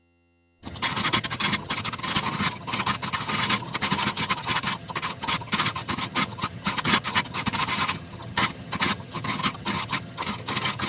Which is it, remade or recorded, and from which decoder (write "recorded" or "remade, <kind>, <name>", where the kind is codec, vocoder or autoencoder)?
remade, vocoder, HiFi-GAN